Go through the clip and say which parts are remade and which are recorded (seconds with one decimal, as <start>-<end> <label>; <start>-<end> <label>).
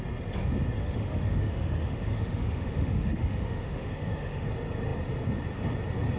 0.0-0.8 recorded; 0.8-4.5 remade; 4.5-6.2 recorded